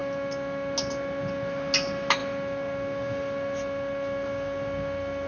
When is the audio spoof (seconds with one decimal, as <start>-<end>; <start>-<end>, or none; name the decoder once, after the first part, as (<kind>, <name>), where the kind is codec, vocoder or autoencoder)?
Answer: none